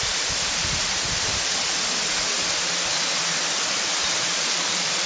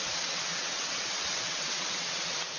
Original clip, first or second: first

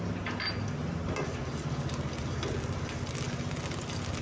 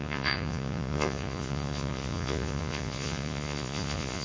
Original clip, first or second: first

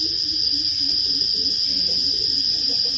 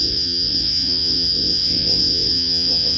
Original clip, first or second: first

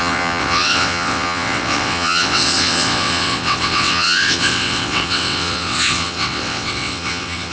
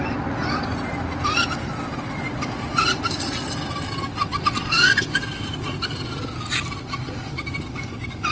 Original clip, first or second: second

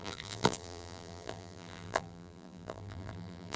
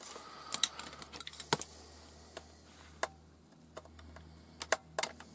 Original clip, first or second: second